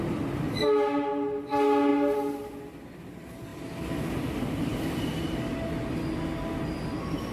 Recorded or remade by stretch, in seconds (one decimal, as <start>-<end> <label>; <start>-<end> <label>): 0.0-7.3 recorded